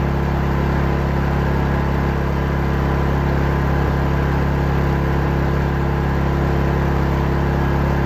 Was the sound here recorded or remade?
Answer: recorded